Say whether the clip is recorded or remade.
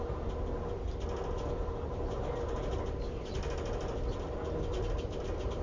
recorded